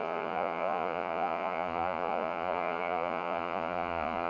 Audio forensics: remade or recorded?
remade